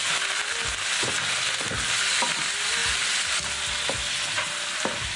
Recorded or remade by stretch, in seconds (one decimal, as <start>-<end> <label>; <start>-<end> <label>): 0.0-5.2 recorded

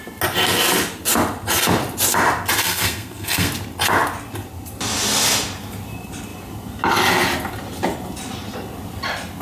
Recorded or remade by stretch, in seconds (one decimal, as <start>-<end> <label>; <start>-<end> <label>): 0.0-2.6 recorded; 2.6-3.5 remade; 3.5-9.4 recorded

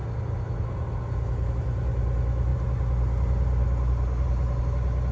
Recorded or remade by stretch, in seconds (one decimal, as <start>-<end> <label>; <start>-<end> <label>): 0.0-5.1 recorded